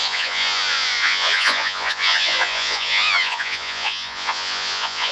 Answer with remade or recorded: remade